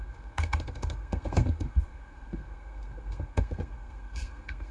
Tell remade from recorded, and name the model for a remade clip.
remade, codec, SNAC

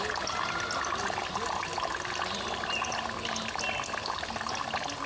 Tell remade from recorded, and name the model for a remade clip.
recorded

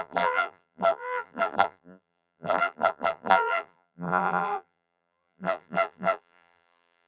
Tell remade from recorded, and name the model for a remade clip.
remade, vocoder, BigVGAN v2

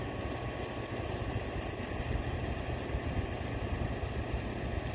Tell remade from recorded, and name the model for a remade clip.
recorded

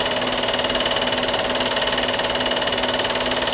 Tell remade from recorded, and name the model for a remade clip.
recorded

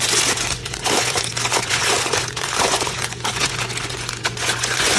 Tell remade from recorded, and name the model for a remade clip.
remade, vocoder, Vocos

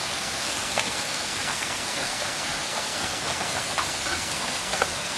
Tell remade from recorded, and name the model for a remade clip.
remade, codec, SNAC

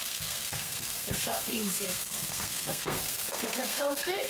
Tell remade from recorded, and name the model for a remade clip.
remade, codec, SNAC